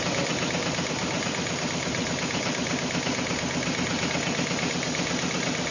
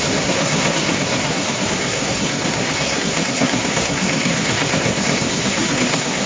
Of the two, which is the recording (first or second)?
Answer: first